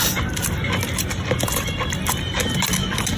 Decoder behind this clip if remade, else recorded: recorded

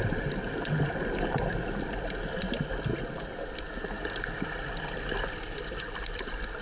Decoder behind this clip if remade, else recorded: recorded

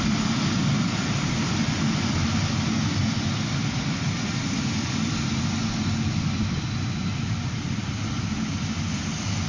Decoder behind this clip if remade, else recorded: recorded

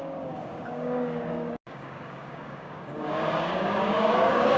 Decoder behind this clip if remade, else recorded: remade, codec, DAC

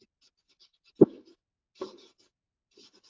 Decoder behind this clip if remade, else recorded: recorded